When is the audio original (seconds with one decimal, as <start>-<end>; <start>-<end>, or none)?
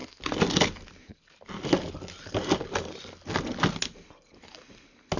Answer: 0.0-5.2